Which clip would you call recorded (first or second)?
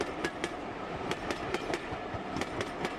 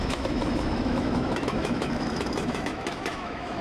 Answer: first